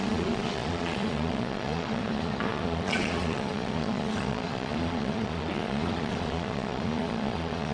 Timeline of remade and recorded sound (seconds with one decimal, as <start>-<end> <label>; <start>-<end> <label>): 0.0-7.7 remade